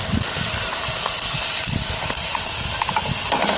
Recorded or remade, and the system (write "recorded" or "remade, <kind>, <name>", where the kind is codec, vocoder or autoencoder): recorded